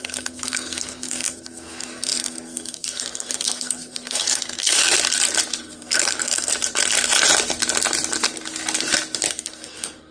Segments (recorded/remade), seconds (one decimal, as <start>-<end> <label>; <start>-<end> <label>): 0.0-4.8 remade; 4.8-5.6 recorded; 5.6-6.5 remade; 6.5-9.3 recorded; 9.3-10.1 remade